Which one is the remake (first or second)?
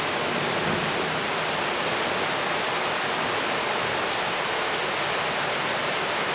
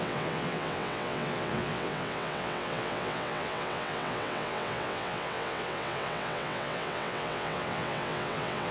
second